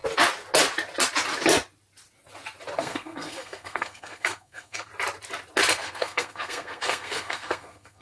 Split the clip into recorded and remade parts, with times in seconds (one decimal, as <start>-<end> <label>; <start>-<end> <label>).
0.0-2.8 recorded; 2.8-4.9 remade; 4.9-5.7 recorded; 5.7-8.0 remade